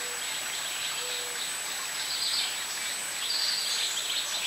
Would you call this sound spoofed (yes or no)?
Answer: no